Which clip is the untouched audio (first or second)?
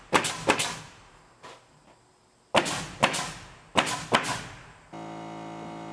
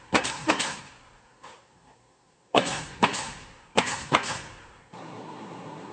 first